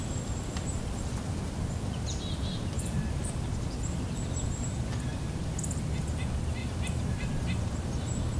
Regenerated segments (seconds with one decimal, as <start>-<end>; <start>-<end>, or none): 6.6-7.9